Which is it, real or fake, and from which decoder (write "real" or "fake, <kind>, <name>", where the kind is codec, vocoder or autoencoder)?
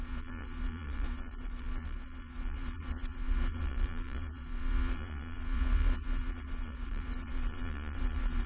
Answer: fake, vocoder, Vocos